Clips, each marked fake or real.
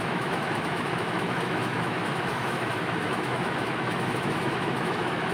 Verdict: fake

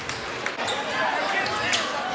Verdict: real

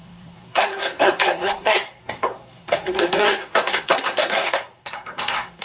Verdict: fake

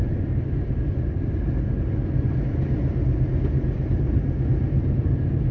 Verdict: real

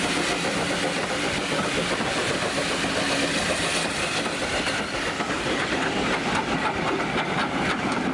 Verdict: real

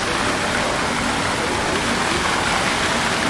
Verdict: real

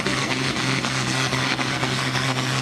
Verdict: fake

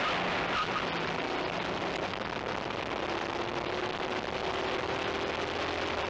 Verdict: real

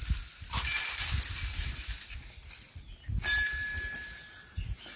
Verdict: real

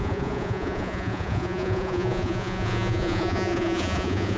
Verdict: fake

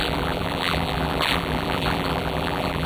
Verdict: fake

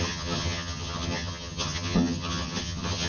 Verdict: fake